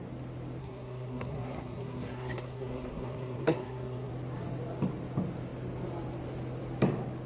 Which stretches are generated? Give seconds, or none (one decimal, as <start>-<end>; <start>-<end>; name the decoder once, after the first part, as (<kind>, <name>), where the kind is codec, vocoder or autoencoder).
0.6-4.1 (codec, SNAC)